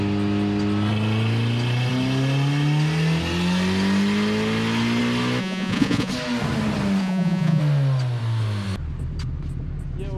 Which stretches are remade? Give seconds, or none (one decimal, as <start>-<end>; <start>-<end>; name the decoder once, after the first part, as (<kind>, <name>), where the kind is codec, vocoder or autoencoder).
5.4-6.1 (vocoder, Vocos); 7.0-7.6